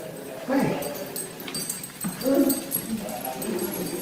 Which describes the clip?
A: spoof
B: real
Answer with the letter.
B